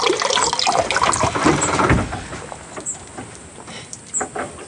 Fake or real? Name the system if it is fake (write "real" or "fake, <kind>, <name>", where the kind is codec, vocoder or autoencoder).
real